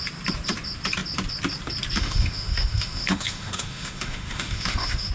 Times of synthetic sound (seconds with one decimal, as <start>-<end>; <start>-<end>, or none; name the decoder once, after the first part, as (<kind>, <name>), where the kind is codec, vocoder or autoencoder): 2.0-5.1 (autoencoder, DAC-VAE)